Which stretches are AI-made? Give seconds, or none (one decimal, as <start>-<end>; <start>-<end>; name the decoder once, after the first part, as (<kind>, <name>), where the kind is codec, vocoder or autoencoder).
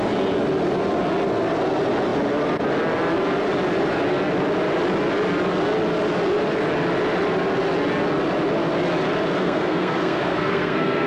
9.4-11.1 (codec, SNAC)